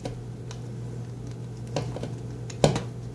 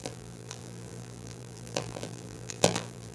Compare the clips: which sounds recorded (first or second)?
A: first